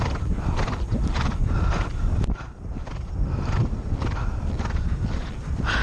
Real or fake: fake